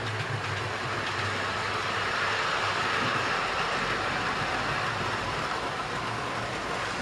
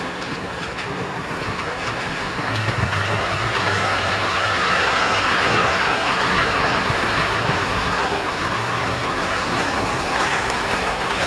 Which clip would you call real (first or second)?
first